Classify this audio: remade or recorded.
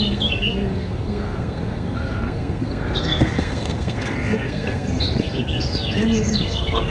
remade